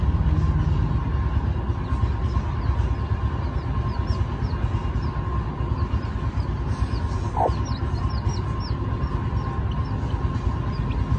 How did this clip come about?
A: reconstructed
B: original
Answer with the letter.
B